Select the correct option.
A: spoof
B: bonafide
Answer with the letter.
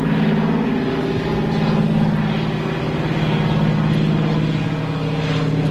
B